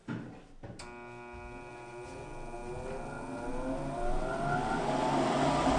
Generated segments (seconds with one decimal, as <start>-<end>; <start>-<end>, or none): none